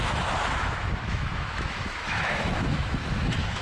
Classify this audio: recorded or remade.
remade